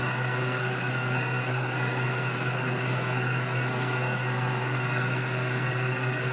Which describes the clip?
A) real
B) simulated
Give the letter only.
B